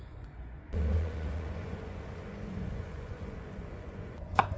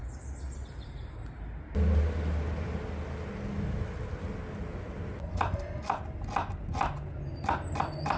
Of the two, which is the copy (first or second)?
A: first